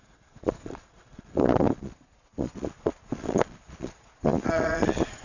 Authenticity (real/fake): fake